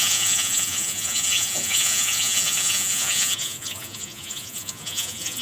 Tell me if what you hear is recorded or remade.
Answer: remade